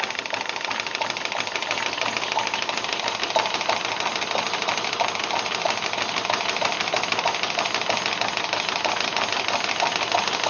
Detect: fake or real real